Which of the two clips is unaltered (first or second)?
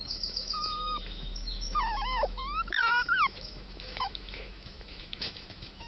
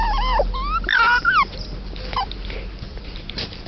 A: second